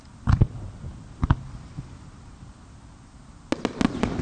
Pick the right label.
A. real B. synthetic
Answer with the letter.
A